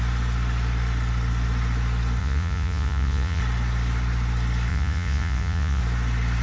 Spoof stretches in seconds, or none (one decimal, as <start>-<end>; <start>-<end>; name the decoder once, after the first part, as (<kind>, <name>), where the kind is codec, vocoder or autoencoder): 2.2-3.4 (vocoder, Vocos); 4.7-5.8